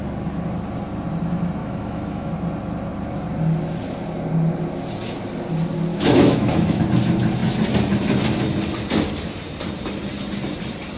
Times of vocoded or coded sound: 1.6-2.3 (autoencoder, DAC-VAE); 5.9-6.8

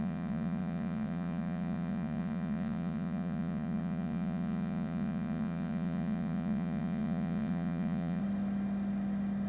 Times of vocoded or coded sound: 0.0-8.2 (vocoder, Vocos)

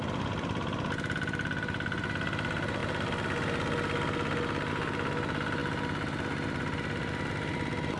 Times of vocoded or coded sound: none

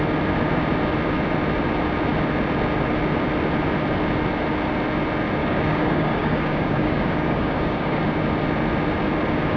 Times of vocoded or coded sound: 5.4-8.0 (codec, DAC)